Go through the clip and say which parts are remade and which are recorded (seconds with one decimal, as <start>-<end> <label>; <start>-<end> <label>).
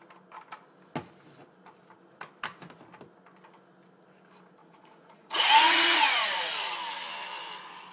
0.0-4.6 recorded; 4.6-6.7 remade; 6.7-7.9 recorded